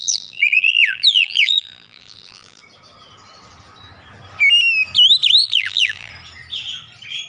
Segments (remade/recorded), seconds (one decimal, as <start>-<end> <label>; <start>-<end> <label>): 0.0-2.6 remade; 2.6-5.4 recorded; 5.4-6.1 remade; 6.1-7.3 recorded